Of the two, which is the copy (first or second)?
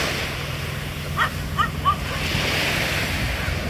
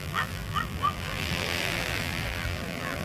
second